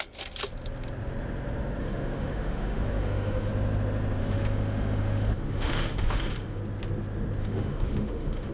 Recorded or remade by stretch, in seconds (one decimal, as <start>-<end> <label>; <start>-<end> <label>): 0.0-1.8 recorded; 1.8-3.5 remade; 3.5-4.2 recorded; 4.2-6.6 remade; 6.6-7.4 recorded; 7.4-8.5 remade